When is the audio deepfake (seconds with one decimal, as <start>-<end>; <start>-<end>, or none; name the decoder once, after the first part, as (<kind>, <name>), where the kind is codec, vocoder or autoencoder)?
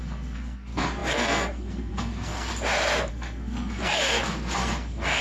0.0-2.5 (codec, SNAC); 3.1-5.2